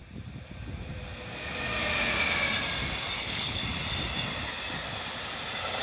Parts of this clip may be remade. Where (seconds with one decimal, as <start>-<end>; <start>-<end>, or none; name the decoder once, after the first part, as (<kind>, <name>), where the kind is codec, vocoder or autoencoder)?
3.2-3.6 (codec, HILCodec)